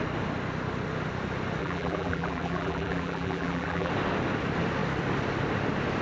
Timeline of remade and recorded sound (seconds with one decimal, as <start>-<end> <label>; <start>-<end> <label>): 0.0-1.6 recorded; 1.6-3.9 remade; 3.9-6.0 recorded